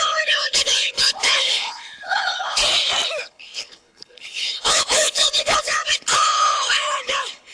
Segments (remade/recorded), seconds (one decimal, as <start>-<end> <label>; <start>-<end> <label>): 0.0-2.6 remade; 2.6-3.2 recorded; 3.2-7.5 remade